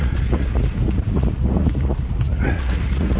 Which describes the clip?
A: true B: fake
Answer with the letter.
B